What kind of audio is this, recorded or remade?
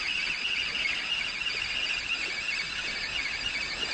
recorded